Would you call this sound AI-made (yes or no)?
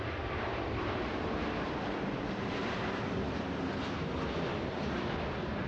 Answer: yes